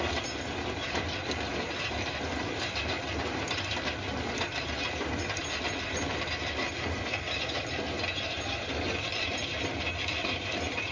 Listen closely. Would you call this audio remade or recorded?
remade